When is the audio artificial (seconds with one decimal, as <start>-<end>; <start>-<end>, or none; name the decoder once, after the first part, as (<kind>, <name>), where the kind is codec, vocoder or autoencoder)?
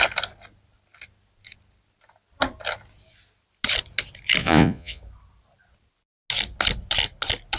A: 4.4-5.0 (vocoder, Vocos)